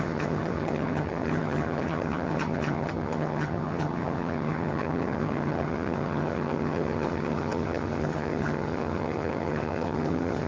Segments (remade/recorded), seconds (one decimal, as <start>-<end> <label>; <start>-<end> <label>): 0.0-10.5 remade